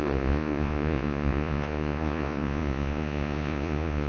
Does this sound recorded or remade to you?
remade